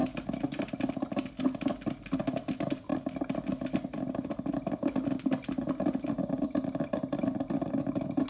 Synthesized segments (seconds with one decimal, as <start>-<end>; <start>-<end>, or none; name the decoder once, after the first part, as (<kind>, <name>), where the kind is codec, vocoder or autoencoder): none